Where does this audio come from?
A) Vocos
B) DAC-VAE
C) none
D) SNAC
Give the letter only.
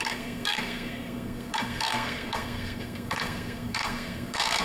D